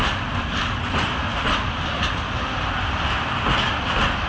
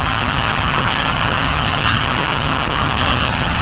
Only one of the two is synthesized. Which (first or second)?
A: second